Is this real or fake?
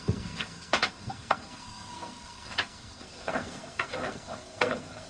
fake